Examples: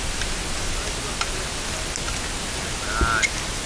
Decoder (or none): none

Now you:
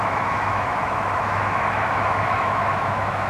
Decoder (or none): autoencoder, DAC-VAE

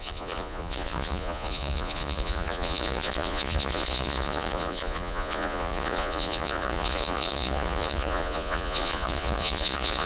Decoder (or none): vocoder, Vocos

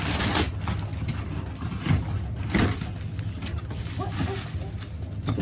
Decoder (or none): none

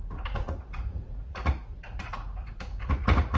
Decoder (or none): vocoder, Vocos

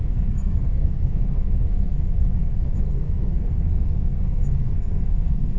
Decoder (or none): codec, SNAC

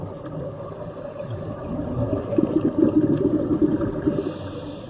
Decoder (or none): none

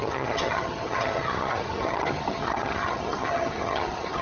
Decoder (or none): vocoder, HiFi-GAN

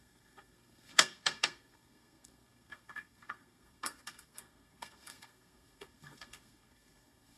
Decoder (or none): codec, SNAC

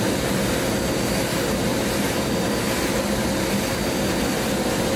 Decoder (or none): none